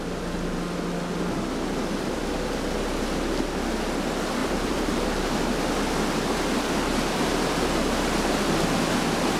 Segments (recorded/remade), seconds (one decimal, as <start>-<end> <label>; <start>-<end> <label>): 0.0-4.4 recorded; 4.4-5.7 remade; 5.7-9.4 recorded